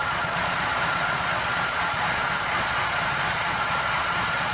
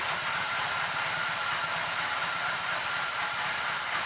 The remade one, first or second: first